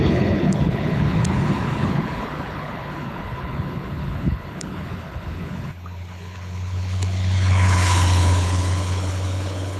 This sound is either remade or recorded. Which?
remade